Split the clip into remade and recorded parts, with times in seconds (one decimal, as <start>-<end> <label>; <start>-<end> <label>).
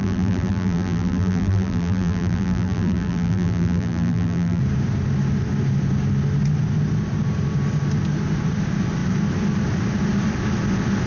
0.0-4.6 remade; 4.6-11.1 recorded